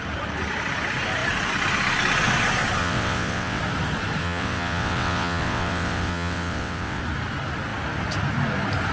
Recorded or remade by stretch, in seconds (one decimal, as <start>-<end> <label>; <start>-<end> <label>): 0.0-2.8 recorded; 2.8-3.6 remade; 3.6-4.2 recorded; 4.2-7.0 remade; 7.0-8.9 recorded